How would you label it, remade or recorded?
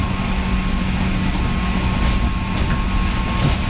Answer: recorded